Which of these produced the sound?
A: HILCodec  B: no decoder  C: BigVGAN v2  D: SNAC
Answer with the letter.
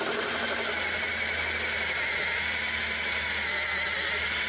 B